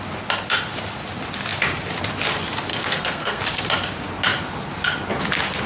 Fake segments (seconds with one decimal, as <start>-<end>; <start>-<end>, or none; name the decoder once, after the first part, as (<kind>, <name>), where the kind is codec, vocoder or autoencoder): 2.7-3.4 (codec, SNAC)